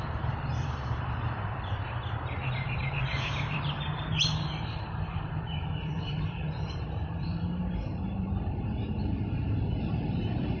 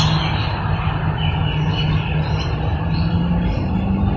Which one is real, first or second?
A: second